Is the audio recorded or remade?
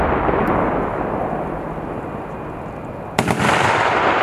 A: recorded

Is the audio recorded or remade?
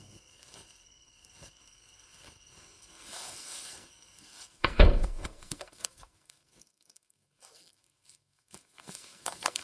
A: remade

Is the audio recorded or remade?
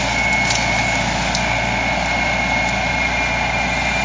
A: recorded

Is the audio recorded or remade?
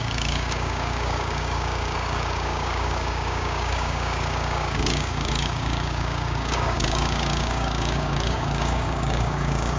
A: remade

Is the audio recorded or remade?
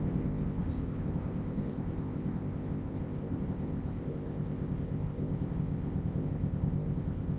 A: remade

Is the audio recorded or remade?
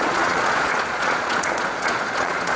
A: remade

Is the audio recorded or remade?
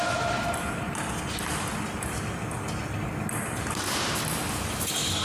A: recorded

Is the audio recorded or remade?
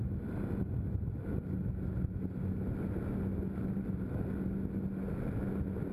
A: recorded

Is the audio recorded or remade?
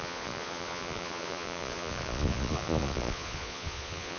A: remade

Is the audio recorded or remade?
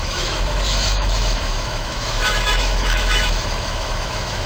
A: remade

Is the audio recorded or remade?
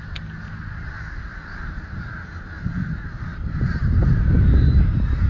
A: recorded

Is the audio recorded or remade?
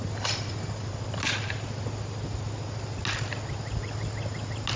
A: recorded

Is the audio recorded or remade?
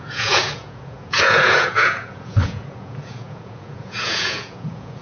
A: remade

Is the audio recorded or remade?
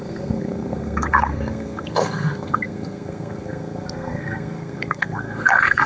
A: remade